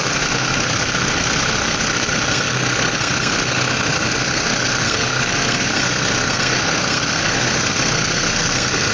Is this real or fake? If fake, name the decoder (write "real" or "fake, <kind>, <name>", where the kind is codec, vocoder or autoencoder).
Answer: fake, codec, SNAC